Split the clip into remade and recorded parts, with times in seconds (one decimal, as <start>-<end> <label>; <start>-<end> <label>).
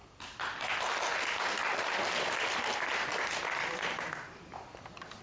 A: 0.0-5.2 recorded